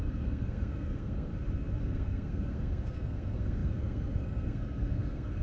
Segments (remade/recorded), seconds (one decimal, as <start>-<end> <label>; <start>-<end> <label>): 0.0-1.3 remade; 1.3-1.8 recorded; 1.8-5.4 remade